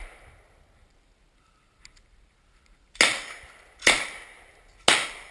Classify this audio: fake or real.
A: real